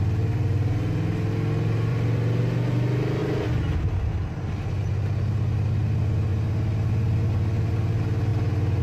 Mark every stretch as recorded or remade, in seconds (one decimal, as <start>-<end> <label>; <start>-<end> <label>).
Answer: 0.0-1.9 recorded; 1.9-2.4 remade; 2.4-8.8 recorded